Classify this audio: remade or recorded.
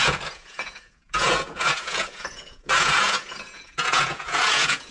remade